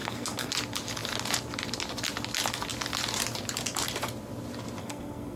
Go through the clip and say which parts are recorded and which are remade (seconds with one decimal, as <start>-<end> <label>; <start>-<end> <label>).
0.0-0.5 remade; 0.5-4.8 recorded; 4.8-5.4 remade